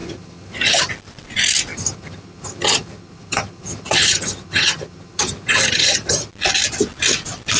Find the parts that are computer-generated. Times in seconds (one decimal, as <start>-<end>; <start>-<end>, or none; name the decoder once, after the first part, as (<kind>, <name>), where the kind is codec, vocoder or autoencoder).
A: 0.0-0.9 (vocoder, HiFi-GAN); 1.7-6.3

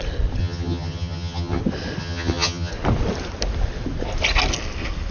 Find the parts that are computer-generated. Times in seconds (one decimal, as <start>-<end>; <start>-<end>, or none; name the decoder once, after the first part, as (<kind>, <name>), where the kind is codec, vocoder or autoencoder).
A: 0.4-1.6 (vocoder, HiFi-GAN); 2.0-2.7

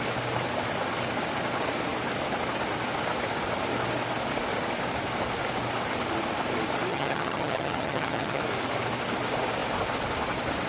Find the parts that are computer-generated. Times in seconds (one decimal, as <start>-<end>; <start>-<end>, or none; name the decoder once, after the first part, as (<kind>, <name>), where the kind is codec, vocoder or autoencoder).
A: 6.9-8.4 (vocoder, HiFi-GAN)

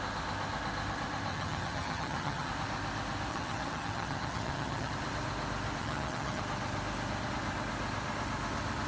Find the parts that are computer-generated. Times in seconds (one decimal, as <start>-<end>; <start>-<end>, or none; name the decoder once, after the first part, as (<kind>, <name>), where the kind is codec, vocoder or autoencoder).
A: 1.3-2.5 (vocoder, HiFi-GAN); 3.3-4.9; 5.8-6.4